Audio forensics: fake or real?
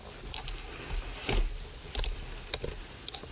real